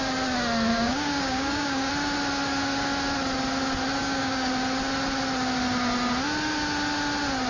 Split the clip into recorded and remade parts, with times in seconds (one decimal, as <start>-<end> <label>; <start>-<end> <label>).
0.0-0.7 recorded; 0.7-1.9 remade; 1.9-4.0 recorded; 4.0-4.5 remade; 4.5-7.5 recorded